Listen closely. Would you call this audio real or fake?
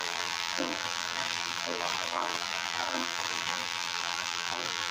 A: fake